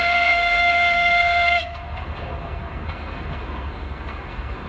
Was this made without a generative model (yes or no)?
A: no